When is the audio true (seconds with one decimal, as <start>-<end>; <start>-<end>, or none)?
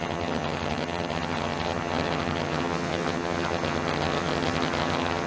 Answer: none